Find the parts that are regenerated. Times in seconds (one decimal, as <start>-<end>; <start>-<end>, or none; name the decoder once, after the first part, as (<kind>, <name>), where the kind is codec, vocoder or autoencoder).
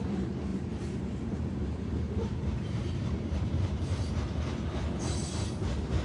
0.5-4.1 (vocoder, BigVGAN v2)